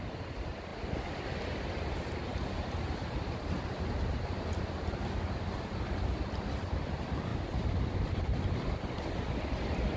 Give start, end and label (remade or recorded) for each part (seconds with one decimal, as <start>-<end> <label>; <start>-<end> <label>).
0.0-10.0 recorded